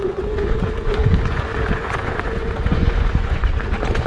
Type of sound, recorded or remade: remade